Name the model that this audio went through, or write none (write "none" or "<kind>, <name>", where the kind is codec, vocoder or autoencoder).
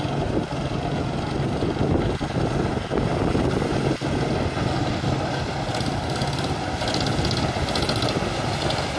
none